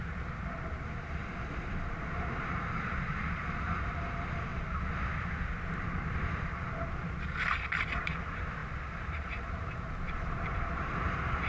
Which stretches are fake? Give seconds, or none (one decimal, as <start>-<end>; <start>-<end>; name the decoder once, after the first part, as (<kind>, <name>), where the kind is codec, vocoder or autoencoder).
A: 0.0-4.5 (vocoder, BigVGAN v2); 8.0-11.5